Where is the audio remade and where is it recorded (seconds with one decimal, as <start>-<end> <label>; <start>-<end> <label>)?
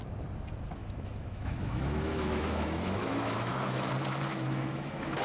0.0-0.8 recorded; 0.8-3.9 remade; 3.9-4.3 recorded; 4.3-5.2 remade